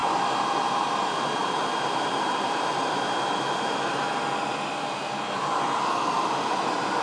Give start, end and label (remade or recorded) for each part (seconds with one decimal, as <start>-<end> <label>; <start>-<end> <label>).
0.0-1.4 recorded; 1.4-3.7 remade; 3.7-7.0 recorded

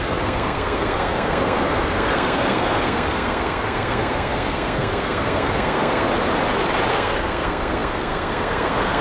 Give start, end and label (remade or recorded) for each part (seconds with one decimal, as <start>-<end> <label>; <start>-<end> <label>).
0.0-6.1 remade; 6.1-6.9 recorded; 6.9-9.0 remade

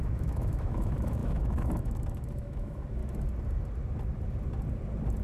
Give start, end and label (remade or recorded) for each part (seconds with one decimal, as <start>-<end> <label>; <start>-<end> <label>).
0.0-3.0 remade; 3.0-5.2 recorded

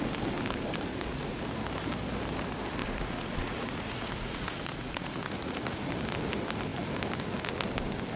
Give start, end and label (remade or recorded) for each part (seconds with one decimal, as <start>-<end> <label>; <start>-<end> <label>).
0.0-0.9 recorded; 0.9-1.4 remade; 1.4-2.8 recorded; 2.8-5.9 remade; 5.9-8.2 recorded

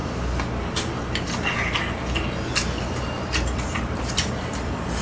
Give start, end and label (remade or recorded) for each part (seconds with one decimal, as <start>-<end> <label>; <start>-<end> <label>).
0.0-3.0 recorded; 3.0-5.0 remade

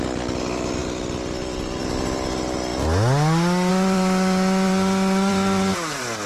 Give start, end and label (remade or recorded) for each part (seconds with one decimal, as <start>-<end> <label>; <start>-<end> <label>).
0.0-2.7 remade; 2.7-3.7 recorded; 3.7-6.3 remade

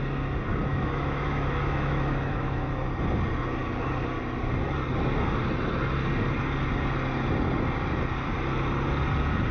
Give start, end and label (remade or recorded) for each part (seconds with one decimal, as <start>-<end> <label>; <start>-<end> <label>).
0.0-0.7 recorded; 0.7-2.8 remade; 2.8-9.5 recorded

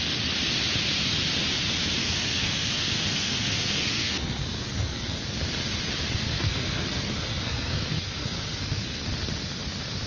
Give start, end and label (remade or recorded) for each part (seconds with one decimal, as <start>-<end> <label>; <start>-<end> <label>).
0.0-2.0 recorded; 2.0-5.2 remade; 5.2-6.2 recorded; 6.2-9.0 remade; 9.0-10.1 recorded